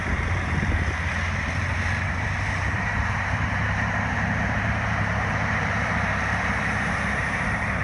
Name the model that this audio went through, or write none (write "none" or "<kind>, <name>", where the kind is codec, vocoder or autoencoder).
vocoder, BigVGAN v2